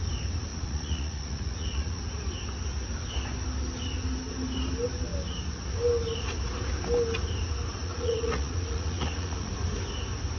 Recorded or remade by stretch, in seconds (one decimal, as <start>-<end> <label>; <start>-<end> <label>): 0.0-0.5 recorded; 0.5-2.0 remade; 2.0-7.8 recorded; 7.8-9.5 remade; 9.5-10.4 recorded